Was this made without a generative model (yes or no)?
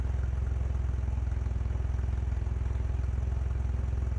yes